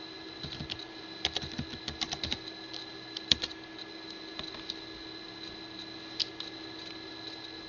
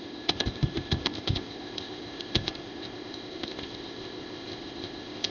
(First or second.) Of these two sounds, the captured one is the first